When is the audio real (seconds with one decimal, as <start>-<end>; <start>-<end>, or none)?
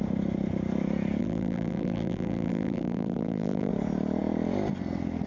0.0-1.2; 3.7-5.3